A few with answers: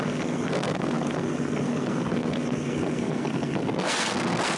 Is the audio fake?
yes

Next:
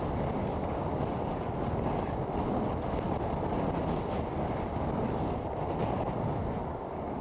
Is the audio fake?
no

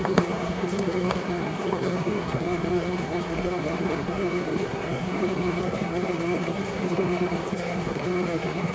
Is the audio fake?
yes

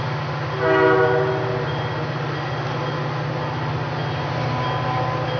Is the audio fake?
no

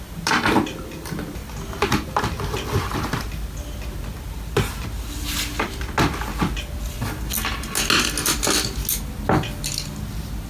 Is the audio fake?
no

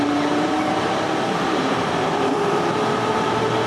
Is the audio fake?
yes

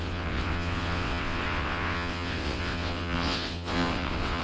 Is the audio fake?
yes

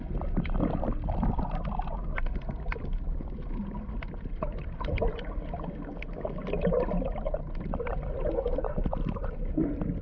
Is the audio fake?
no